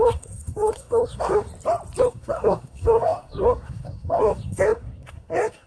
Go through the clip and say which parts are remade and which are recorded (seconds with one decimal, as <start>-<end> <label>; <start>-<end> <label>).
0.0-1.5 remade; 1.5-2.0 recorded; 2.0-5.7 remade